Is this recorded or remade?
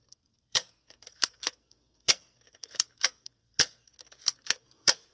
remade